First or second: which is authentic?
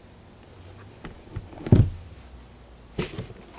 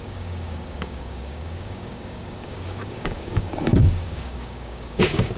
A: first